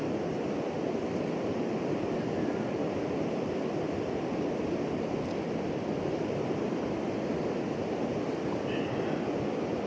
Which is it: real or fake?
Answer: real